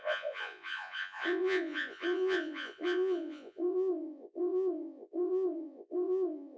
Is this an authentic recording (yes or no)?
no